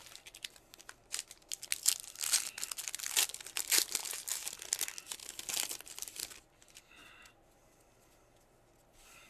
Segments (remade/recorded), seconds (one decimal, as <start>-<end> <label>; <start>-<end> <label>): 0.0-9.3 recorded